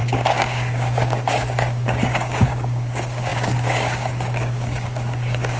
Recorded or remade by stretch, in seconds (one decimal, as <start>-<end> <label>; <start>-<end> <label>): 0.0-5.6 remade